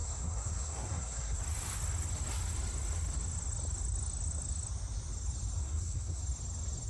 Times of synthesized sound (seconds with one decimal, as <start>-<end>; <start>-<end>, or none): 0.0-1.4; 5.6-6.2